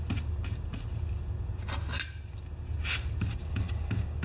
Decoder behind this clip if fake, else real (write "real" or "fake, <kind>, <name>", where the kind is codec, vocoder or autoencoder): real